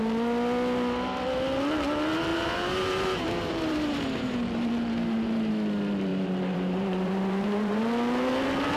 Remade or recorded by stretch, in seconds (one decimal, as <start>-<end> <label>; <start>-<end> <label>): 0.0-2.3 recorded; 2.3-5.5 remade; 5.5-6.1 recorded; 6.1-7.8 remade; 7.8-8.8 recorded